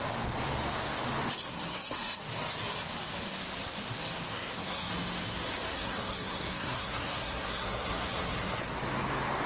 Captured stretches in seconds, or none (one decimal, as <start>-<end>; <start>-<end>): 0.0-1.4; 2.2-4.3; 4.9-5.7; 8.6-9.5